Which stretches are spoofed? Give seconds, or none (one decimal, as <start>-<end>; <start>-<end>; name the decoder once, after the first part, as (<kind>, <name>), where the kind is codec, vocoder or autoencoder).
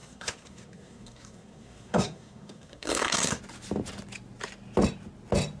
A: 0.0-3.4 (codec, SNAC)